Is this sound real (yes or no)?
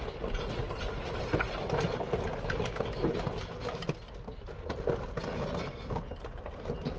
yes